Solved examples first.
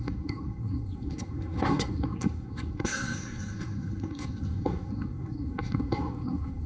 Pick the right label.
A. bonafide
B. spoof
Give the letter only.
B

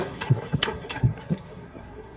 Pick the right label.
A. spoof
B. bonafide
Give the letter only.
A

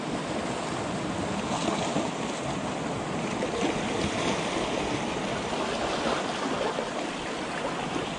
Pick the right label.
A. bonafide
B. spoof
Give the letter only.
A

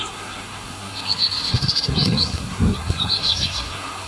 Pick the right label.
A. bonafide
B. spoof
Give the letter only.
B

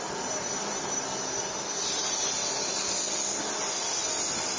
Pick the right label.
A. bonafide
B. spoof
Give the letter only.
A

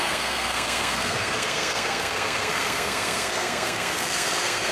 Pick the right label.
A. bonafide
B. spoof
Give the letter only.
B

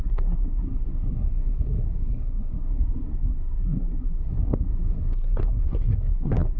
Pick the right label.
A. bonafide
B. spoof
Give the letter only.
B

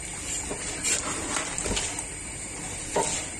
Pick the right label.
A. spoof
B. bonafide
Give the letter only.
B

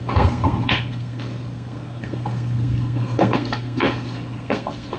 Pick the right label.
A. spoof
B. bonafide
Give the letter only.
A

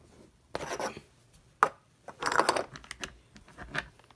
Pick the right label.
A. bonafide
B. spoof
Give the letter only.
A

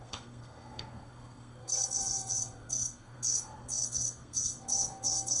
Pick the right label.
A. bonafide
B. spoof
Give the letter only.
B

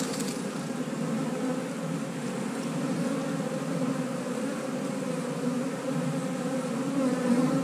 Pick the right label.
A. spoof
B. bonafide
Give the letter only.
B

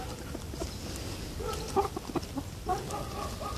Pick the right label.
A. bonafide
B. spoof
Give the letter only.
A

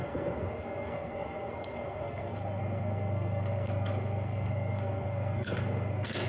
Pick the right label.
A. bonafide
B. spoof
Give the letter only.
B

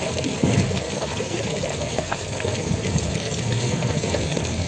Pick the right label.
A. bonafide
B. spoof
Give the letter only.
B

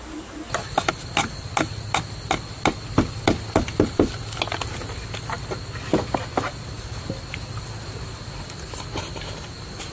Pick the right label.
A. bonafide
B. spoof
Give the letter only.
A